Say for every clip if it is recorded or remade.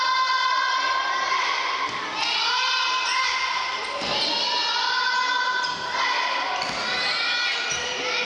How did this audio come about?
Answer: recorded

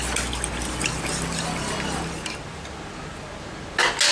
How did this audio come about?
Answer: recorded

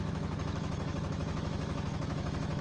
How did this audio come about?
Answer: remade